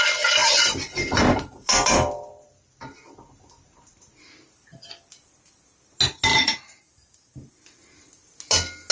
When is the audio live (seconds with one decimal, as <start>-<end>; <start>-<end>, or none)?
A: 0.0-0.4; 2.6-6.3; 6.9-8.9